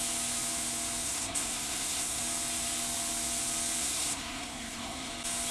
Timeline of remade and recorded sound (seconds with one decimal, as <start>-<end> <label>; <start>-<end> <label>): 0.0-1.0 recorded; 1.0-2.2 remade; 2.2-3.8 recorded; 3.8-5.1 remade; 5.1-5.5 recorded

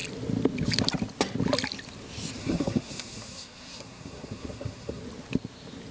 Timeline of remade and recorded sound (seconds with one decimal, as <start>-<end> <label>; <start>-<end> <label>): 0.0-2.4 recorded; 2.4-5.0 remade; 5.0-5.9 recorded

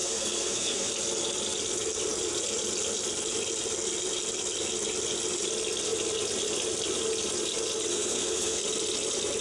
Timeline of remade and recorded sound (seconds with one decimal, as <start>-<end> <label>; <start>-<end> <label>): 0.0-0.9 remade; 0.9-7.9 recorded; 7.9-8.6 remade; 8.6-9.4 recorded

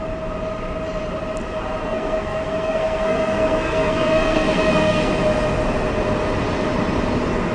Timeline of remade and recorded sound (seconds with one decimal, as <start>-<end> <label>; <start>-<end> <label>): 0.0-1.8 recorded; 1.8-5.1 remade; 5.1-7.5 recorded

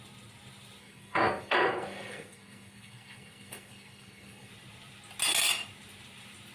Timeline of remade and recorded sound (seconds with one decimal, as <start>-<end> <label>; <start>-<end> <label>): 0.0-0.8 recorded; 0.8-4.5 remade; 4.5-6.5 recorded

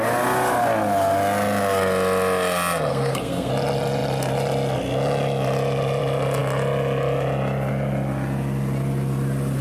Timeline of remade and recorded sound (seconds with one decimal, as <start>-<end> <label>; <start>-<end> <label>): 0.0-2.9 recorded; 2.9-3.5 remade; 3.5-9.6 recorded